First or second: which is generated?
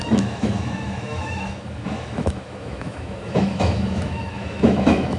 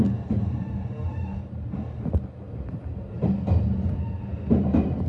first